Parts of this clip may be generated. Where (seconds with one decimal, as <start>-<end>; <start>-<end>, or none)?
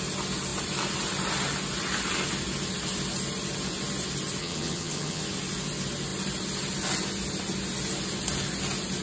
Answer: 4.4-5.2